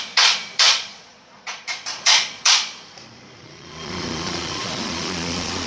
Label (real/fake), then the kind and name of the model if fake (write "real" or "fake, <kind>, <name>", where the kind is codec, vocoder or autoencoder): fake, vocoder, Vocos